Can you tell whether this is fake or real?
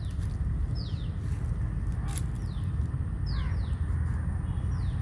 real